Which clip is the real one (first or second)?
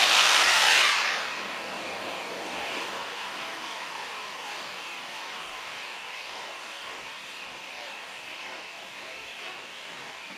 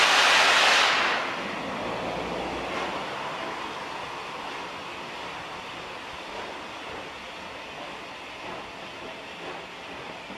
second